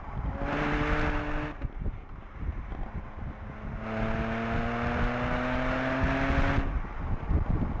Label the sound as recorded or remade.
recorded